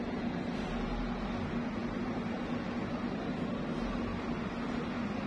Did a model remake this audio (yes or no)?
no